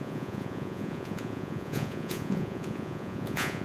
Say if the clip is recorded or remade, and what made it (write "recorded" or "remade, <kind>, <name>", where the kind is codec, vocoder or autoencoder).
remade, vocoder, Vocos